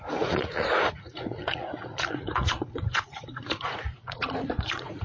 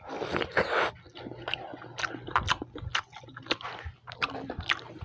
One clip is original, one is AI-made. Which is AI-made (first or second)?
first